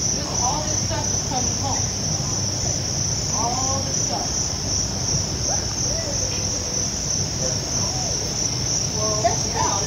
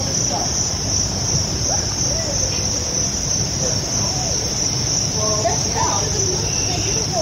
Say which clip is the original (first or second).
first